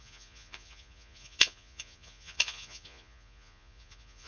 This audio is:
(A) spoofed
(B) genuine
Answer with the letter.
A